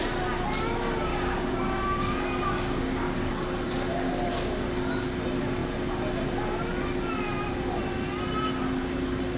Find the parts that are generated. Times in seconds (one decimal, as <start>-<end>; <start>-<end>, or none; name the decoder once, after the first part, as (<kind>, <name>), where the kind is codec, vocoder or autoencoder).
1.1-3.3 (codec, DAC)